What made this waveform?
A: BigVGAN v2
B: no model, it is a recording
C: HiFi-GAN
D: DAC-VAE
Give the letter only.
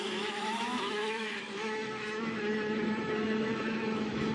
D